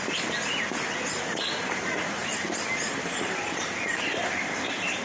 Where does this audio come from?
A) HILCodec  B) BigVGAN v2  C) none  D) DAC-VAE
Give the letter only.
C